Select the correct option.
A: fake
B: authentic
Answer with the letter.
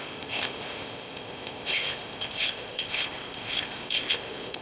A